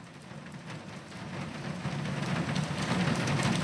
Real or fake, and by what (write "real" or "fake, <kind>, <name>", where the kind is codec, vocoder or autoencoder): real